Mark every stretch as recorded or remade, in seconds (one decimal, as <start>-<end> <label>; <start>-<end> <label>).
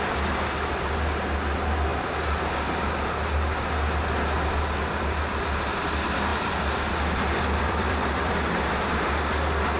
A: 0.0-6.3 recorded; 6.3-8.3 remade; 8.3-9.8 recorded